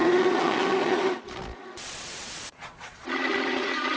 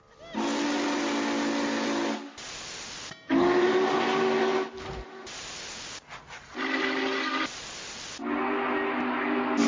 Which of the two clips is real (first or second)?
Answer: second